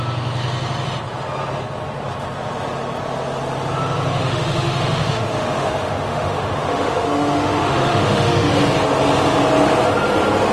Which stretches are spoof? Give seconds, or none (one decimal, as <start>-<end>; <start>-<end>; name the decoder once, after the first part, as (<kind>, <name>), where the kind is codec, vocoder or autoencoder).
4.2-8.6 (autoencoder, DAC-VAE)